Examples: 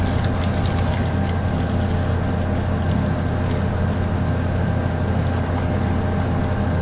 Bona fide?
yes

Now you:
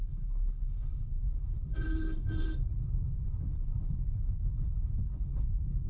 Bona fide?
no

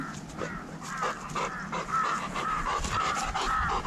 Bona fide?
yes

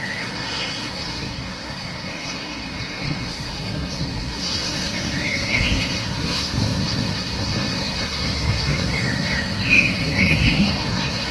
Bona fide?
no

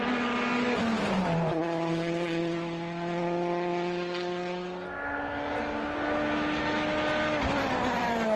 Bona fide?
yes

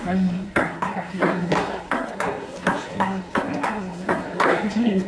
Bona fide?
no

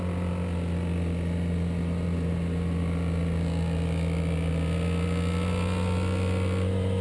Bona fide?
yes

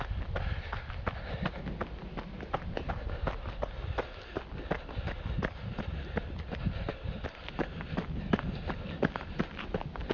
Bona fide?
yes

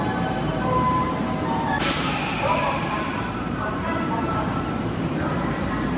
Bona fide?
no